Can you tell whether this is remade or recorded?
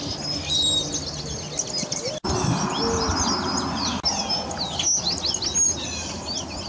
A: recorded